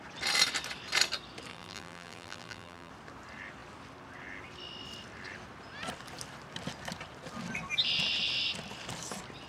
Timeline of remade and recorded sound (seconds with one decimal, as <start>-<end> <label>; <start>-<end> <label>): 0.0-1.5 recorded; 1.5-2.9 remade; 2.9-9.5 recorded